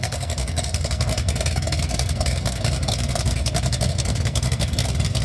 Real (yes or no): no